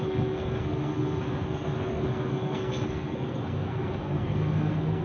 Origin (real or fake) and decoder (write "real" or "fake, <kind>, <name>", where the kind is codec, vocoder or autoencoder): fake, codec, SNAC